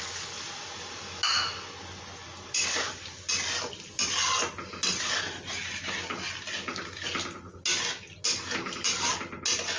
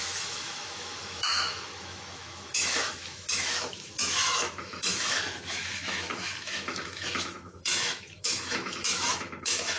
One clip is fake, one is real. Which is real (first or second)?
first